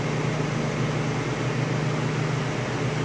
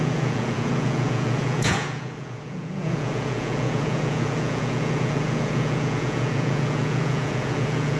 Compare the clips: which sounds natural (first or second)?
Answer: first